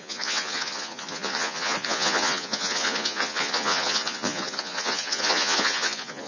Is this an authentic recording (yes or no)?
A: no